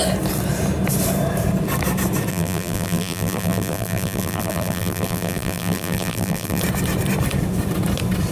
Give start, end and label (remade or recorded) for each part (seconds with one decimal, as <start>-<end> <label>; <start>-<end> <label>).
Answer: 0.0-2.3 recorded; 2.3-6.6 remade; 6.6-8.3 recorded